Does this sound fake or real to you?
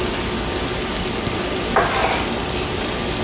real